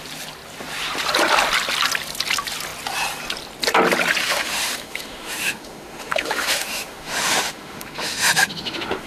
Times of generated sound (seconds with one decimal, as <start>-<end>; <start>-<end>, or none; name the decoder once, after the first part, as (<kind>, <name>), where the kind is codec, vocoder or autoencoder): 4.2-9.1 (autoencoder, DAC-VAE)